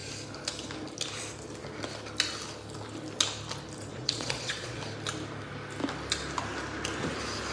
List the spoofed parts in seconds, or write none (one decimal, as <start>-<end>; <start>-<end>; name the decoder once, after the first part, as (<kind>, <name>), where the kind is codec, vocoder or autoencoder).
3.9-4.8 (vocoder, Vocos)